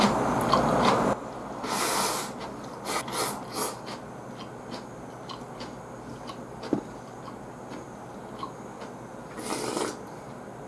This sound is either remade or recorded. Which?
recorded